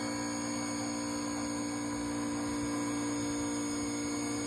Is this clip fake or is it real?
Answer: real